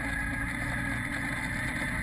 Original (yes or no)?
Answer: yes